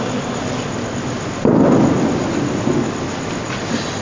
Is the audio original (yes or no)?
yes